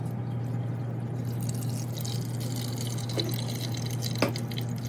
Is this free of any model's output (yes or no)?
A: yes